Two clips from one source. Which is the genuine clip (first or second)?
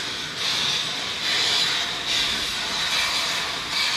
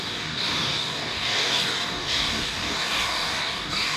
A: first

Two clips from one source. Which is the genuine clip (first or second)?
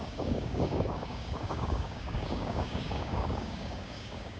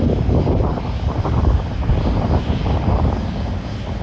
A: second